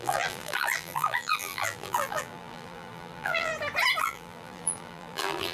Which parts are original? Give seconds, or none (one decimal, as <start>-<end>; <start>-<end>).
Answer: 3.5-4.0